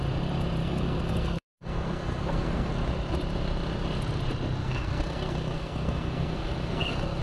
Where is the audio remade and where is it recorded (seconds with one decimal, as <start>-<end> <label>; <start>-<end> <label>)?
0.0-0.6 recorded; 0.6-2.7 remade; 2.7-4.6 recorded; 4.6-7.2 remade